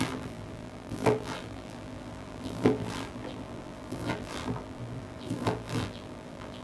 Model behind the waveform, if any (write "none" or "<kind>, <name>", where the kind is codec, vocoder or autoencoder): vocoder, BigVGAN v2